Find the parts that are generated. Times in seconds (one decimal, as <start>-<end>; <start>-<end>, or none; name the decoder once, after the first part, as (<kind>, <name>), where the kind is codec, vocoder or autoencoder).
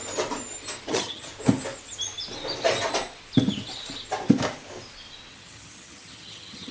0.9-1.3 (vocoder, HiFi-GAN); 5.3-6.7